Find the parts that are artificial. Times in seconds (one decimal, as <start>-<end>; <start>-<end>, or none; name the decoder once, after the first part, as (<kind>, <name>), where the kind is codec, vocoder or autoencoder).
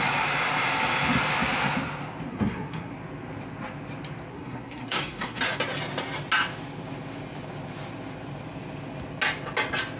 2.3-2.9 (codec, SNAC); 4.3-5.4